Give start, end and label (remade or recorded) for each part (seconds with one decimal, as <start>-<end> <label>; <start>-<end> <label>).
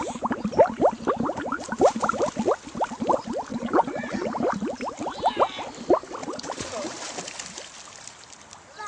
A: 0.0-3.5 recorded; 3.5-4.3 remade; 4.3-6.2 recorded; 6.2-6.7 remade; 6.7-8.9 recorded